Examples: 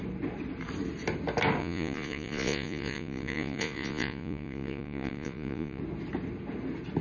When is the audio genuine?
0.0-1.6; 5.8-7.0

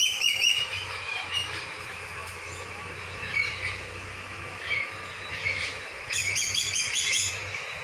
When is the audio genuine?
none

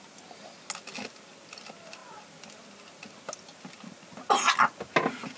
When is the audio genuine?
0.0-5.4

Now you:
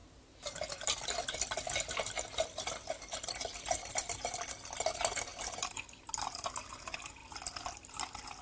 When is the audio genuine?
0.0-8.4

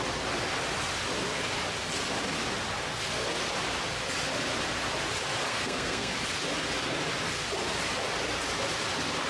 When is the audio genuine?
0.0-5.5; 6.1-9.3